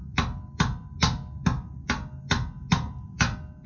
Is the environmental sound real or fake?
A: real